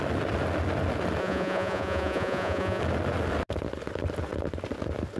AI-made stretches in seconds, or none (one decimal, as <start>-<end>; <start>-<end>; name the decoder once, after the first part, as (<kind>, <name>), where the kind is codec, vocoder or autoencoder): 1.2-2.8 (vocoder, Vocos)

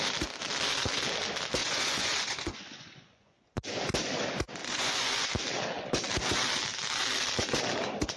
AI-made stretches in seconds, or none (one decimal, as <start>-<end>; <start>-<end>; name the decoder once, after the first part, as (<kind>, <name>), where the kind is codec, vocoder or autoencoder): 1.6-3.9 (vocoder, Vocos); 4.6-5.3

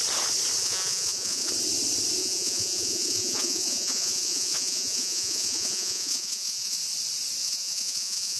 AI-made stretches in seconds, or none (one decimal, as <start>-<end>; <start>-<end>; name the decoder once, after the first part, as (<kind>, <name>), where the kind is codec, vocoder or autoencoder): 0.6-1.5 (vocoder, Vocos); 2.2-6.8; 7.4-8.4

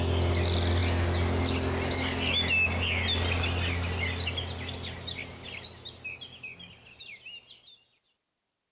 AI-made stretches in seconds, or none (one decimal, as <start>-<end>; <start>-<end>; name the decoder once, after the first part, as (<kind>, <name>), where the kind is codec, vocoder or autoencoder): none